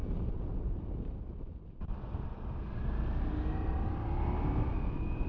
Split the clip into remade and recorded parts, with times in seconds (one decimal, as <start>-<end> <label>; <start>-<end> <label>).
0.0-5.3 remade